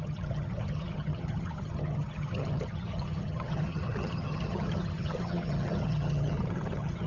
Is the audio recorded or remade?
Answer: remade